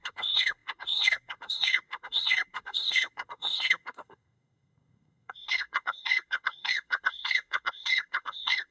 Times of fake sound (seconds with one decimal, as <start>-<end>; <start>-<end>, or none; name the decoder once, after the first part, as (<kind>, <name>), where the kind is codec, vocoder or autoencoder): 0.0-8.7 (codec, SNAC)